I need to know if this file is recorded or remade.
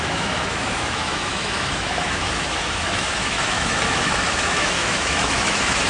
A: remade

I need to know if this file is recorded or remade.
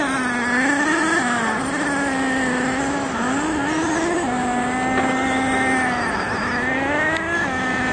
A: recorded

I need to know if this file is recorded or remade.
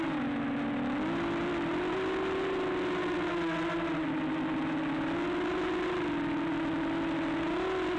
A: recorded